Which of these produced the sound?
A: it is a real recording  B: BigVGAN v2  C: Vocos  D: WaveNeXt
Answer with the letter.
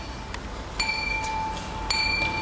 A